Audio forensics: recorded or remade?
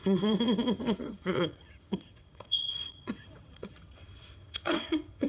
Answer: remade